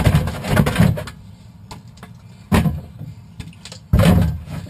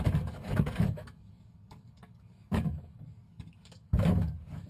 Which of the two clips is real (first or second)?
first